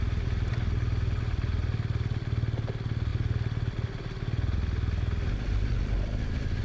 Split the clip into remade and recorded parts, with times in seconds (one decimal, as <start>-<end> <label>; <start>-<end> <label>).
0.0-6.6 recorded